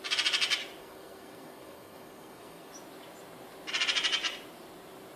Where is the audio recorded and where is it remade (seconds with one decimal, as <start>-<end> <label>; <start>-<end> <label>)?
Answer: 0.0-0.8 recorded; 0.8-2.7 remade; 2.7-5.2 recorded